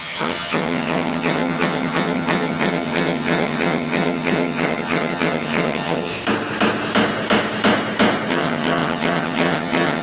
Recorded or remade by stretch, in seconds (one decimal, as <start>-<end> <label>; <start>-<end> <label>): 0.0-6.1 remade; 6.1-8.3 recorded; 8.3-10.0 remade